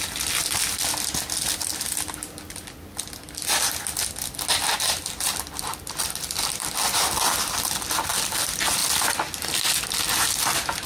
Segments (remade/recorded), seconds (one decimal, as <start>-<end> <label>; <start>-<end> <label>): 0.0-10.9 recorded